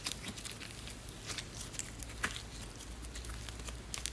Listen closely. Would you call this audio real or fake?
real